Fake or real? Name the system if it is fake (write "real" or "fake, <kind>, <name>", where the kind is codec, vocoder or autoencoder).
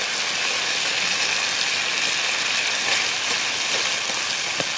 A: real